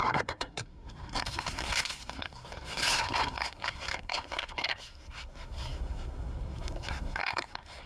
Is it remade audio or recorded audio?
remade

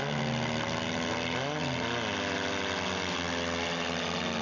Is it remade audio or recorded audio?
recorded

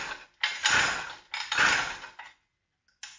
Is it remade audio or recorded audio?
recorded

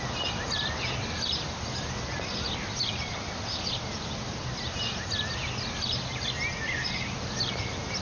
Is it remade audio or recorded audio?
recorded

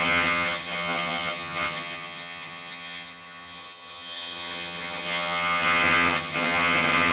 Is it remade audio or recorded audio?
remade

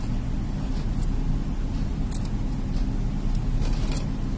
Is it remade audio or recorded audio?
recorded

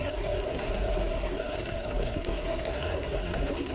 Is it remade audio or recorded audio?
remade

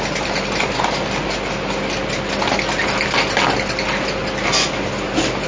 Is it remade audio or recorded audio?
recorded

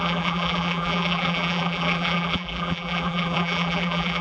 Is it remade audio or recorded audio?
remade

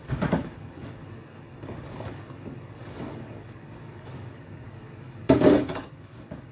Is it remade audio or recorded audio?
remade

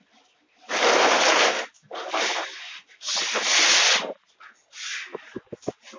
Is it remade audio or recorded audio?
recorded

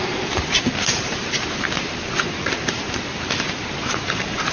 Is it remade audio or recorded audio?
remade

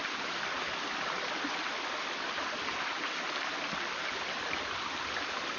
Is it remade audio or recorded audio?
recorded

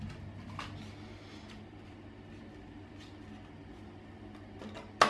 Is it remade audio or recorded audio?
recorded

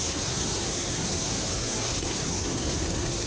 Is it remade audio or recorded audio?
remade